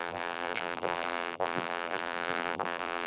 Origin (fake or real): fake